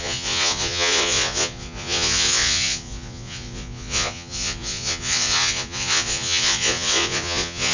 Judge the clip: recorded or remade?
remade